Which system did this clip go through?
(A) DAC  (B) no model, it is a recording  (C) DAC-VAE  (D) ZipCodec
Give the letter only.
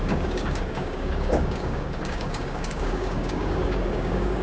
A